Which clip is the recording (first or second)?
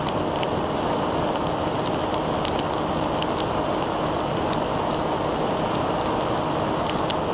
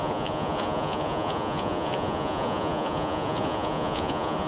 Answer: first